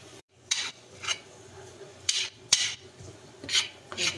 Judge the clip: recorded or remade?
remade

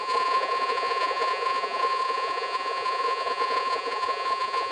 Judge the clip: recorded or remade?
remade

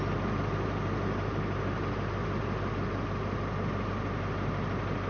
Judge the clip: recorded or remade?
recorded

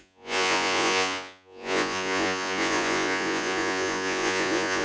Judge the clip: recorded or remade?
remade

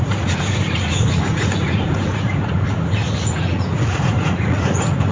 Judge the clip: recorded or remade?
remade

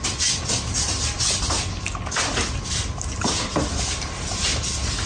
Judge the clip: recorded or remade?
recorded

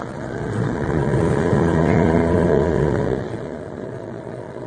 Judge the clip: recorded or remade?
remade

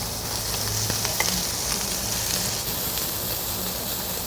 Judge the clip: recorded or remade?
recorded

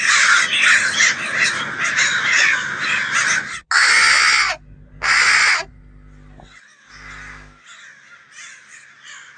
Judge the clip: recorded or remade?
recorded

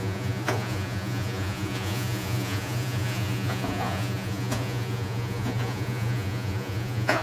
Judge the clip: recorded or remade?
remade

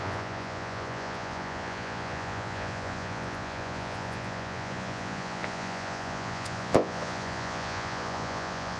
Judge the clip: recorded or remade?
remade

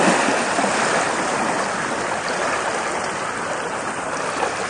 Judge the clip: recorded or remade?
recorded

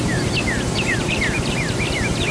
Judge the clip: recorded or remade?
recorded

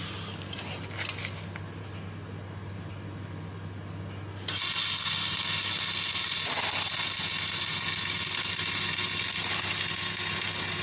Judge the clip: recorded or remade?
recorded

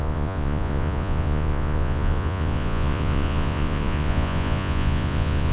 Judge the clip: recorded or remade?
remade